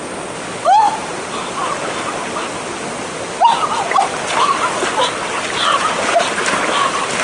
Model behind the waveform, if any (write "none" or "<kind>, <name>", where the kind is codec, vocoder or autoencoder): none